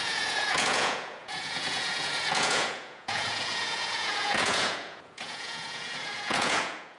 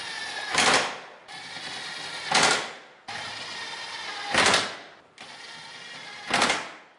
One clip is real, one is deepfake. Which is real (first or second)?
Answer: second